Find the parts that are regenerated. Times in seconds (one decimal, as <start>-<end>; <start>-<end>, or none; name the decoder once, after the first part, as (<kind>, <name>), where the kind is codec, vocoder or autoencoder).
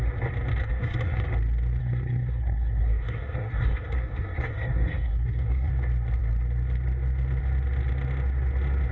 0.6-1.2 (codec, SNAC); 1.8-5.7